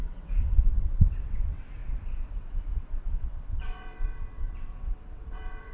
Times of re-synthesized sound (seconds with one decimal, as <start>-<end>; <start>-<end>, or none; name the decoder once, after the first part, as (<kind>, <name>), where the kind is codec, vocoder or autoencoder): 0.0-5.7 (vocoder, WaveNeXt)